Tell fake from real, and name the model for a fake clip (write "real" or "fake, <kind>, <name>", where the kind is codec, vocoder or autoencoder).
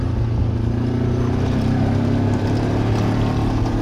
real